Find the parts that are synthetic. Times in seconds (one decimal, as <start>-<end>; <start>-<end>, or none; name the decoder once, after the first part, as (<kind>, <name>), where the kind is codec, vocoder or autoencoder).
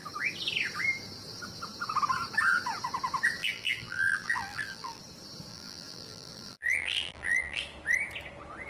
3.4-5.0 (vocoder, BigVGAN v2); 5.5-7.6